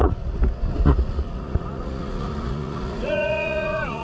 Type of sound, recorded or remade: remade